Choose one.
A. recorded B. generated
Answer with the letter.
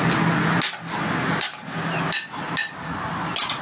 A